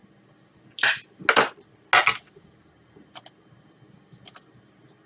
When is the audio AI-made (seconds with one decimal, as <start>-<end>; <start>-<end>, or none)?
none